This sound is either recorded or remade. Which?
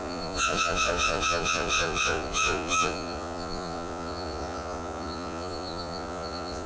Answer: remade